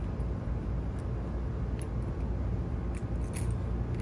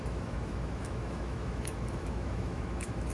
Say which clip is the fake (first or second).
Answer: second